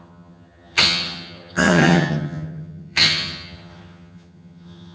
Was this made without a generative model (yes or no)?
no